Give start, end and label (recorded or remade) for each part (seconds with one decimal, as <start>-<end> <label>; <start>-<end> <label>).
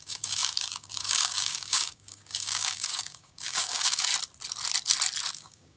0.0-4.1 remade; 4.1-5.3 recorded; 5.3-5.8 remade